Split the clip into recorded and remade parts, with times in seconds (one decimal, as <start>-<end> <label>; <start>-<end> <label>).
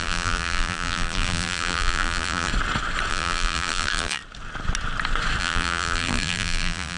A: 0.0-2.5 remade; 2.5-3.1 recorded; 3.1-4.2 remade; 4.2-5.4 recorded; 5.4-7.0 remade